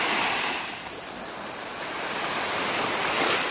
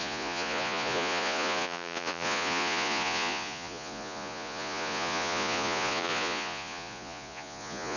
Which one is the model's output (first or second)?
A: second